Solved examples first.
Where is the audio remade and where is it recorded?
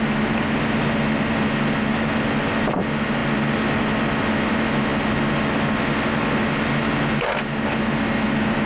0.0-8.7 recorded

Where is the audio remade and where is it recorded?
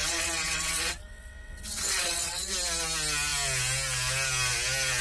0.0-2.5 remade; 2.5-5.0 recorded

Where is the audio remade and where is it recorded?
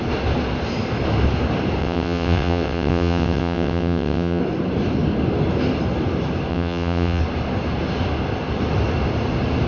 0.0-1.8 recorded; 1.8-4.4 remade; 4.4-6.5 recorded; 6.5-7.2 remade; 7.2-9.7 recorded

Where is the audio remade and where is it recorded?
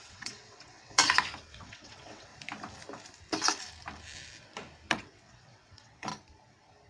0.0-1.0 remade; 1.0-1.5 recorded; 1.5-2.3 remade; 2.3-4.9 recorded; 4.9-6.1 remade; 6.1-6.9 recorded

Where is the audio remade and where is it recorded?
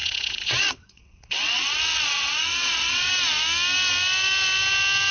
0.0-3.1 remade; 3.1-5.1 recorded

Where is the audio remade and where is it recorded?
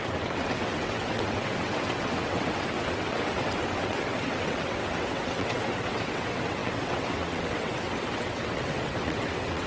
0.0-9.7 remade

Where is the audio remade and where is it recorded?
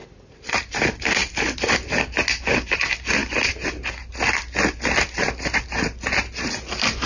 0.0-7.1 recorded